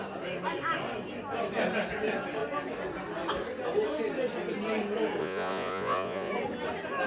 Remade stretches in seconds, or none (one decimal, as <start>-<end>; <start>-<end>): 5.2-6.3